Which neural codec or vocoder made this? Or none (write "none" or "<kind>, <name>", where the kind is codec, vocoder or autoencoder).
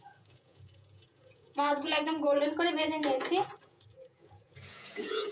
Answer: vocoder, Vocos